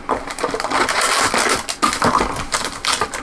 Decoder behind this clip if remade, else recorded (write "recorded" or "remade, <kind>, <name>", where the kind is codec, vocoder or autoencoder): recorded